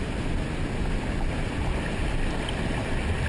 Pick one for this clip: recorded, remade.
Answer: recorded